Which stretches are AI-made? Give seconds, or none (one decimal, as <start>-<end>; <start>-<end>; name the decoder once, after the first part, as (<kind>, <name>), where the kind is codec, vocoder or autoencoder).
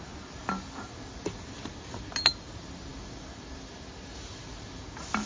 none